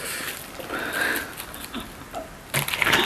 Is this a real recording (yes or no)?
yes